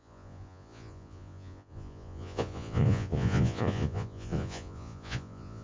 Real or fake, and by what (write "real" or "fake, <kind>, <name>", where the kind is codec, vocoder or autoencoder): fake, vocoder, Vocos